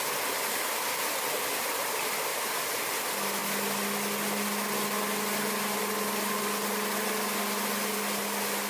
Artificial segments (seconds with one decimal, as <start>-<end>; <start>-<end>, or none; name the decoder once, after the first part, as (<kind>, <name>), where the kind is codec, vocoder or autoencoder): 2.3-3.0 (vocoder, BigVGAN v2)